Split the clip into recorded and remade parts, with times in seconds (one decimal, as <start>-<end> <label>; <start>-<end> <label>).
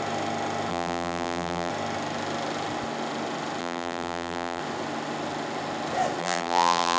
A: 0.0-0.7 recorded; 0.7-1.7 remade; 1.7-3.6 recorded; 3.6-4.6 remade; 4.6-6.2 recorded; 6.2-7.0 remade